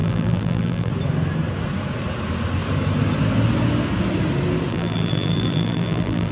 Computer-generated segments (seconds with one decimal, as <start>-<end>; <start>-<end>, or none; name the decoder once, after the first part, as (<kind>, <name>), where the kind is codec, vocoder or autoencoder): 0.0-0.9 (vocoder, BigVGAN v2); 4.7-6.3